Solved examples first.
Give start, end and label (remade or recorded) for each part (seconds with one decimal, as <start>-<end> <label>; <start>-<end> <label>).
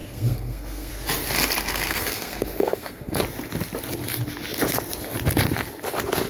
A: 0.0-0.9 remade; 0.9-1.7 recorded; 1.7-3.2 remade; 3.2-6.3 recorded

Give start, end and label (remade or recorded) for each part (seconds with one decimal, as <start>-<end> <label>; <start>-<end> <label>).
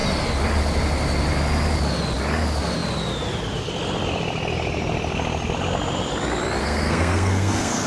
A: 0.0-6.6 recorded; 6.6-7.9 remade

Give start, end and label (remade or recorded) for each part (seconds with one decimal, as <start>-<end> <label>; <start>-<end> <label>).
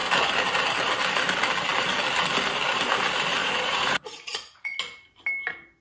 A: 0.0-3.4 recorded; 3.4-4.8 remade; 4.8-5.8 recorded